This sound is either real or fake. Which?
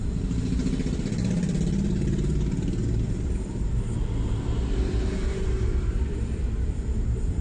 fake